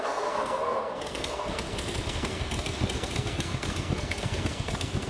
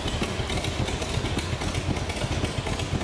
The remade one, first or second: first